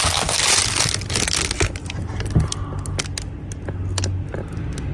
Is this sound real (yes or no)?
yes